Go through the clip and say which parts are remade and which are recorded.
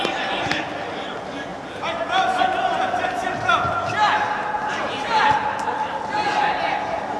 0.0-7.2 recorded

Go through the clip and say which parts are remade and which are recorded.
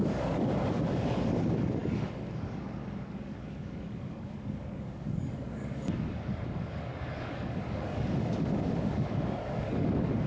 0.0-10.3 remade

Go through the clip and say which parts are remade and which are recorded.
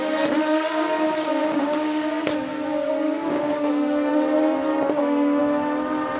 0.0-0.4 recorded; 0.4-4.1 remade; 4.1-4.7 recorded; 4.7-5.4 remade; 5.4-6.2 recorded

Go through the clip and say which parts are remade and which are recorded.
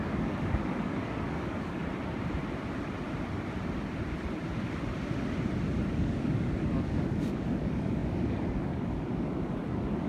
0.0-1.8 remade; 1.8-5.9 recorded; 5.9-10.1 remade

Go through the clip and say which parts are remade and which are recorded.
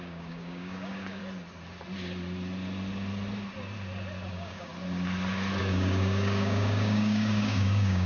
0.0-1.2 remade; 1.2-4.3 recorded; 4.3-4.7 remade; 4.7-5.6 recorded; 5.6-8.1 remade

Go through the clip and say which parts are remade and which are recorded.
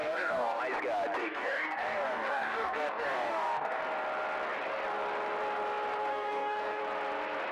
0.0-0.6 remade; 0.6-1.2 recorded; 1.2-3.8 remade; 3.8-6.1 recorded; 6.1-6.8 remade; 6.8-7.5 recorded